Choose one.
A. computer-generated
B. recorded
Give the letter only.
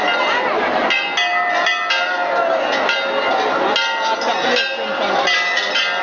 B